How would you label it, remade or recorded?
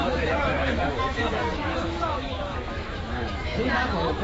remade